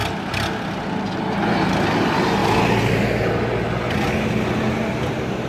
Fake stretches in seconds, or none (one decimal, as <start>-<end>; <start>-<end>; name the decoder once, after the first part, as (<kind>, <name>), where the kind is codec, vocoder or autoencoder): none